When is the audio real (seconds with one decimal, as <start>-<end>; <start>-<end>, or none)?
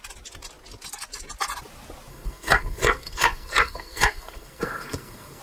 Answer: 0.0-2.1